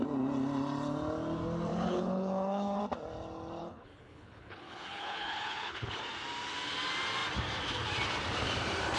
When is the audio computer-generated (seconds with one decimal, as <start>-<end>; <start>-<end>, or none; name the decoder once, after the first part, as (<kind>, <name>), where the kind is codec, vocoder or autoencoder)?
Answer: 1.7-2.8 (codec, HILCodec); 3.6-6.0